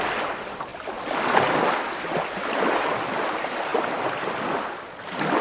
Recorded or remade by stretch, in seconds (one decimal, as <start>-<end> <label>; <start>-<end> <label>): 0.0-5.4 recorded

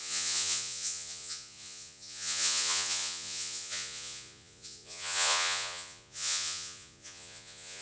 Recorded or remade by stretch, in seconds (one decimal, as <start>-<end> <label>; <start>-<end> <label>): 0.0-7.8 remade